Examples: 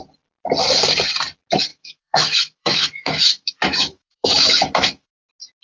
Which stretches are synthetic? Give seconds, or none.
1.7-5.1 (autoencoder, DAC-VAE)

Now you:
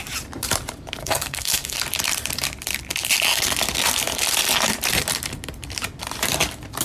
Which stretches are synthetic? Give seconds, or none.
1.0-1.8 (codec, SNAC)

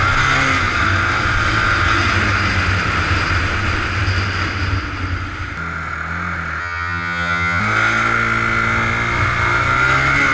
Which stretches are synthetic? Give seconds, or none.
6.6-7.6 (vocoder, HiFi-GAN)